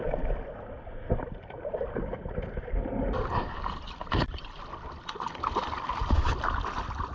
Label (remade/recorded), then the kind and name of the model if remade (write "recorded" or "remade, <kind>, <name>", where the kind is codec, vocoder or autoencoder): recorded